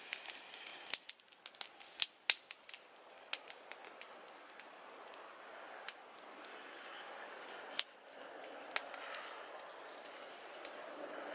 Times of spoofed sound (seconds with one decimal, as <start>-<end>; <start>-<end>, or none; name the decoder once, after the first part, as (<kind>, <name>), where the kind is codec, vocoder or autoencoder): none